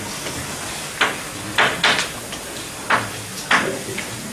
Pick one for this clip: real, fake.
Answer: real